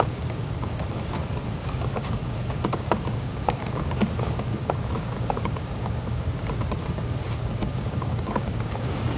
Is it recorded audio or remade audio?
remade